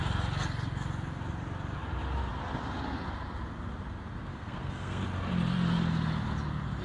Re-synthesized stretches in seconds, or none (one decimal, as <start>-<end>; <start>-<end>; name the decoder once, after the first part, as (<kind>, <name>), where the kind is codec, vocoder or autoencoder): 4.3-5.0 (codec, SNAC)